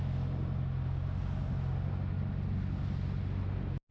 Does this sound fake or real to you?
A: real